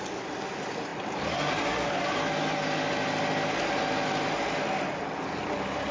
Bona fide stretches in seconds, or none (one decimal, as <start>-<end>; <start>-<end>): 0.0-5.9

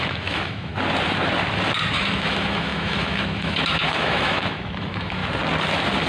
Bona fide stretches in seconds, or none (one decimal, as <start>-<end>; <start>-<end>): 0.7-1.9; 5.2-6.1

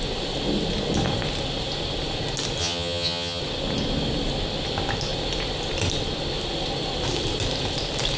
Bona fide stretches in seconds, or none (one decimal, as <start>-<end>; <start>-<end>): 0.0-2.6; 3.4-8.2

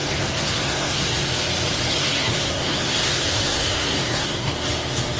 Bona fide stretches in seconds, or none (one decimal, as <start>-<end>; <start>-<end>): 1.3-1.9; 4.5-5.2